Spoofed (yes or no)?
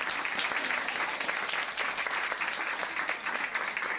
no